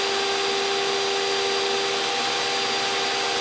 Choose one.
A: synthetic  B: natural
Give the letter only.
B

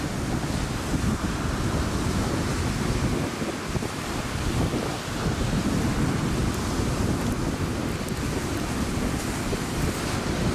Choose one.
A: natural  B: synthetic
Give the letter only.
A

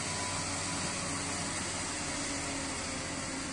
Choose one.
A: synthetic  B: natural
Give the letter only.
B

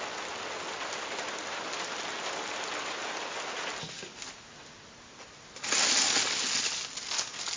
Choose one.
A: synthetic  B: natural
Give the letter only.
B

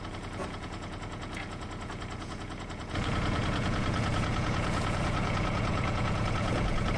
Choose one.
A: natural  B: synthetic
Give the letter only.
B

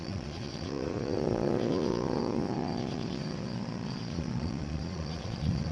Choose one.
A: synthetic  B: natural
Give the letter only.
A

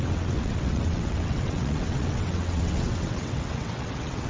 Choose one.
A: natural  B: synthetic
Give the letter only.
B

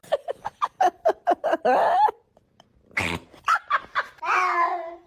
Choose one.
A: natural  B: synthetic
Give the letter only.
A